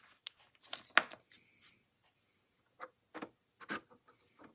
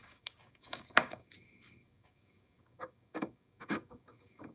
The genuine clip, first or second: first